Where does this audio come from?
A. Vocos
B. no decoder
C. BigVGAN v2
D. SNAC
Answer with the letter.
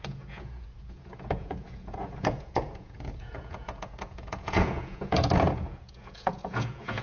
A